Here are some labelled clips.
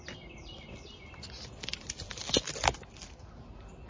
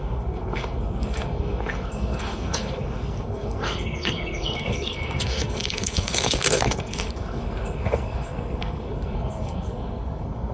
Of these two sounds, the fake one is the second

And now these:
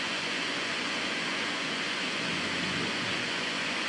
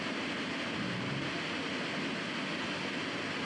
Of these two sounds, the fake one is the first